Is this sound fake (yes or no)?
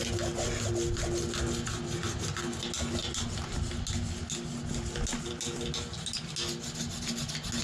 no